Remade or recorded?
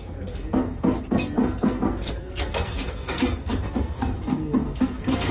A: remade